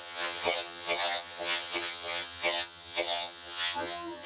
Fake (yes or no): yes